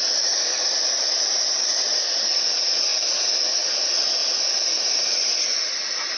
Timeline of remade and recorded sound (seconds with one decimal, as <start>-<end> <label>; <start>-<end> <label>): 0.0-4.2 recorded; 4.2-5.8 remade; 5.8-6.2 recorded